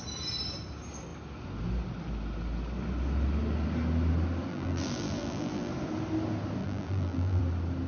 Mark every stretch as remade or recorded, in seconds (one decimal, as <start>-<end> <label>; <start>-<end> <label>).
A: 0.0-4.5 recorded; 4.5-5.7 remade; 5.7-6.6 recorded; 6.6-7.4 remade; 7.4-7.9 recorded